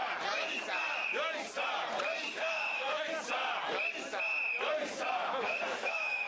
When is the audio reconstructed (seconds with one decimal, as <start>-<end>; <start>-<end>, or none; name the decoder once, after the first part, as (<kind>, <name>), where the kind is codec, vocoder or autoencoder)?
2.3-3.1 (autoencoder, DAC-VAE); 5.4-6.3